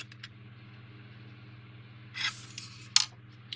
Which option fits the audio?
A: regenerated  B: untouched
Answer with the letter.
B